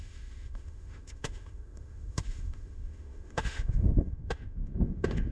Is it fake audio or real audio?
fake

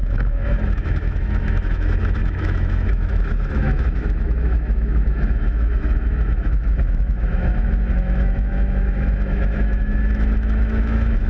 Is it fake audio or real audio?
fake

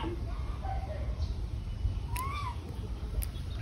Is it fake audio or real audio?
real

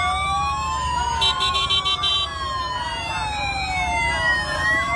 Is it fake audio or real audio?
real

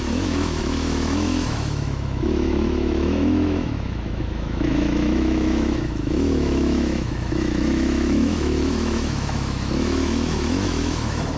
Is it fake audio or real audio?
fake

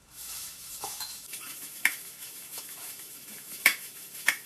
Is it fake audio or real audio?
fake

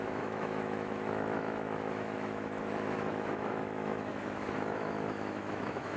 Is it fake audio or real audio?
fake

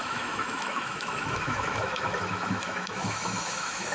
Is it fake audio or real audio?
fake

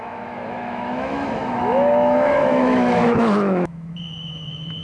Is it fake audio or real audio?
fake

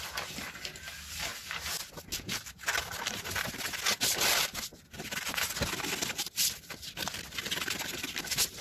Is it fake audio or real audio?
real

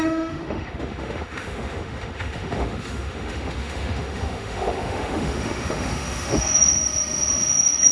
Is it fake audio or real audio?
fake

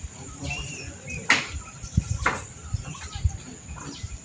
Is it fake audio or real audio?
real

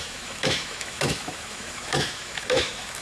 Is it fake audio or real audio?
fake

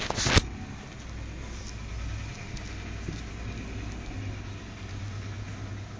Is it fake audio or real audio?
real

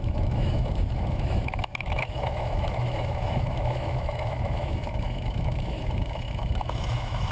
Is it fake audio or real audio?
fake